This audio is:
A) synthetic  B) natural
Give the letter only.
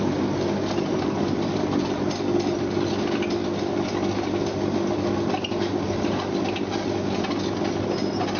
B